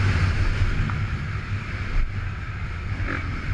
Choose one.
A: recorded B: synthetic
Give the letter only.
A